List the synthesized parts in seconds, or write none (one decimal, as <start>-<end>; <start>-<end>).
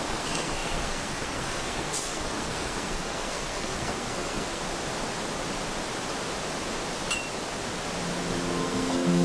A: 0.0-4.6; 8.6-9.2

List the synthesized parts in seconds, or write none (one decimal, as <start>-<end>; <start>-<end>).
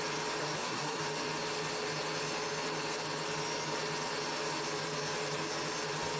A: 0.4-1.0